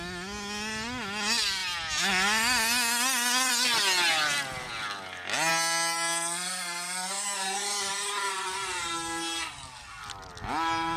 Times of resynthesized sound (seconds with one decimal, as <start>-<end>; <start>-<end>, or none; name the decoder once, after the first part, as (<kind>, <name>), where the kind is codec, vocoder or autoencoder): none